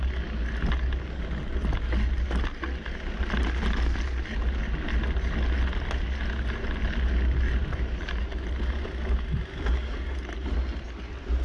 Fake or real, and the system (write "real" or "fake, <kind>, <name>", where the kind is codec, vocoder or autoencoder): real